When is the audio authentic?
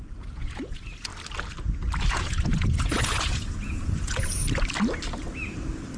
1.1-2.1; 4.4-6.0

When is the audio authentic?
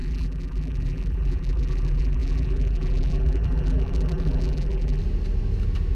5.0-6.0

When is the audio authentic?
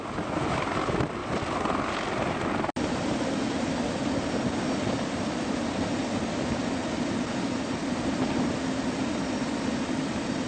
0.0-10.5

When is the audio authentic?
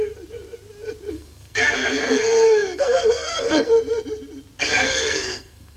0.0-1.1; 3.7-4.6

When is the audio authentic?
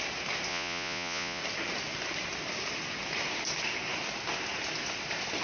0.0-0.5; 1.4-5.4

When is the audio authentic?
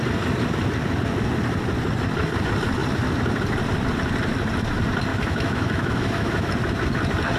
0.0-5.1; 6.5-7.4